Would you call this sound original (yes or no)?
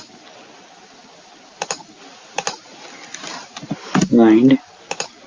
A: yes